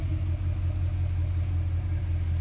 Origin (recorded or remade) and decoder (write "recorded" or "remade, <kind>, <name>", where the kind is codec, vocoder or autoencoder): recorded